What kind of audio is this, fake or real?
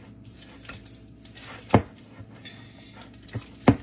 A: real